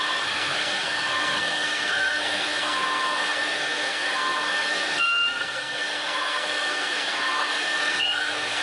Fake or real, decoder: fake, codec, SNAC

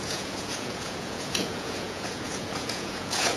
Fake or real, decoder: fake, vocoder, Vocos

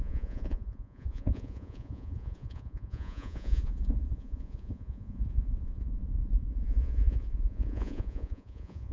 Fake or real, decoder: fake, vocoder, Vocos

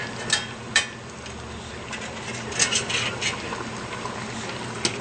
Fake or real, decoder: real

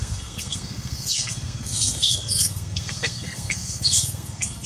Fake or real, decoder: fake, codec, SNAC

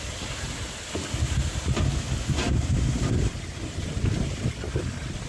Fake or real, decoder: real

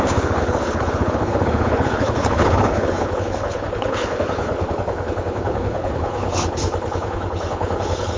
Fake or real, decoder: fake, codec, HILCodec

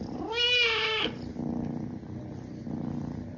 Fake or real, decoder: real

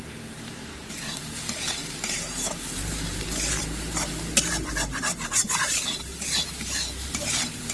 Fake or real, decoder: fake, vocoder, BigVGAN v2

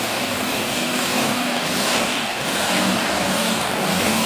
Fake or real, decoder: fake, codec, DAC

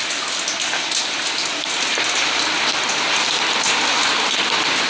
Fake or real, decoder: real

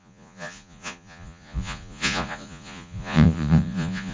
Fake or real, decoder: fake, vocoder, Vocos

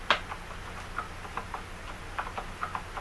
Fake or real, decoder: real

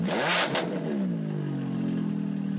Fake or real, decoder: real